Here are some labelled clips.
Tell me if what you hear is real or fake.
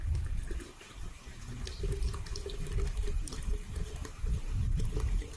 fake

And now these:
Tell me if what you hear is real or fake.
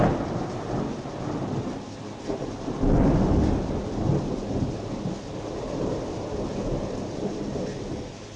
real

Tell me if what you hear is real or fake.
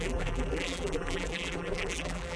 fake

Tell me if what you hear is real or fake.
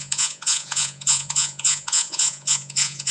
fake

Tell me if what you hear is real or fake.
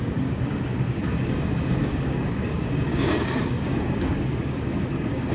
fake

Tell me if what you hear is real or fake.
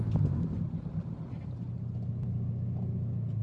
real